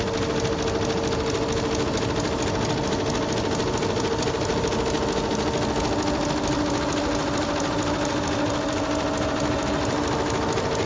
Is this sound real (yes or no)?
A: yes